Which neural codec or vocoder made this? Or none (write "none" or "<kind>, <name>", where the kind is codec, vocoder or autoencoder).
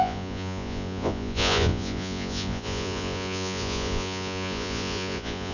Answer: vocoder, Vocos